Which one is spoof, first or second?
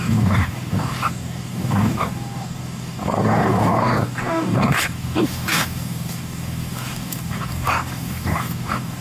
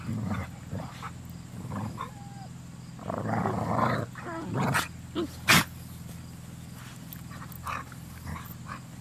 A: first